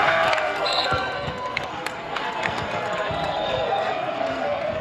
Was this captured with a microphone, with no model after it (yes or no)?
no